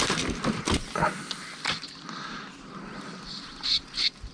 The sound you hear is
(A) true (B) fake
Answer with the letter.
A